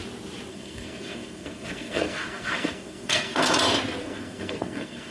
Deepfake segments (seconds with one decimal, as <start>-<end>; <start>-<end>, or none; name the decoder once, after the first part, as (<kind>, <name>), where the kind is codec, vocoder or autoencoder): 0.5-3.5 (codec, SNAC); 4.0-5.1